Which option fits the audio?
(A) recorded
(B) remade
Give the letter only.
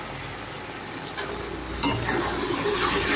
A